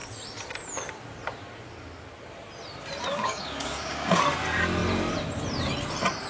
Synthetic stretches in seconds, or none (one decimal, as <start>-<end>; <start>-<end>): 3.1-4.2

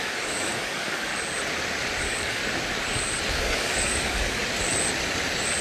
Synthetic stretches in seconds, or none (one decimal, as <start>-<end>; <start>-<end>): 0.0-1.1; 2.0-2.4; 3.3-4.4